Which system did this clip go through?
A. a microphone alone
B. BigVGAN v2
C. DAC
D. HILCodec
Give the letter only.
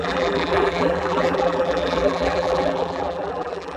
B